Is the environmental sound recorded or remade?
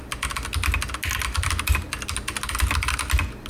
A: recorded